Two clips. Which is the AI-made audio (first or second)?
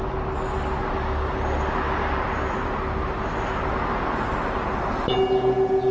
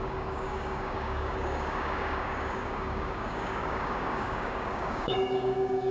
second